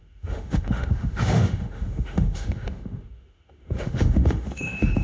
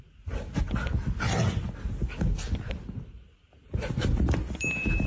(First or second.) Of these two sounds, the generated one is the first